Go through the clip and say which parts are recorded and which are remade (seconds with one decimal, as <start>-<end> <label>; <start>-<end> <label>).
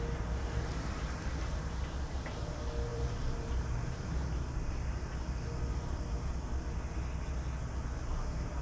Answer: 0.0-2.9 recorded; 2.9-4.4 remade; 4.4-8.6 recorded